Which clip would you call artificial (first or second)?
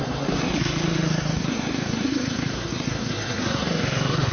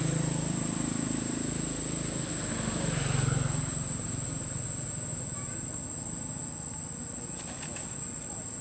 first